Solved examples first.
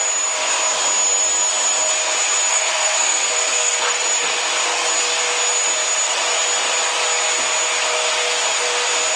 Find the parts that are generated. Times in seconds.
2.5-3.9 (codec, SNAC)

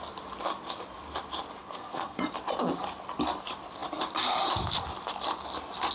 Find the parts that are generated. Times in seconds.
1.6-2.2 (codec, SNAC)

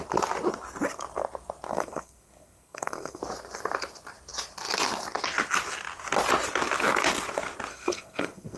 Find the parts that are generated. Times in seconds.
1.7-3.2 (codec, SNAC); 7.7-8.6

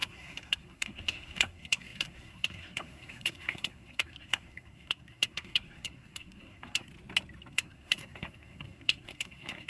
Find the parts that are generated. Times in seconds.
0.0-6.9 (codec, SNAC); 7.5-9.7